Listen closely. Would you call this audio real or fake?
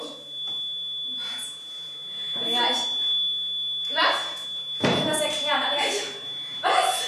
real